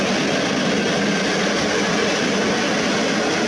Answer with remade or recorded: recorded